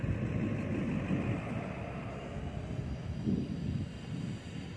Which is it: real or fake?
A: real